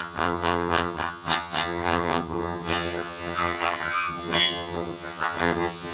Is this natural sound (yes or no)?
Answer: no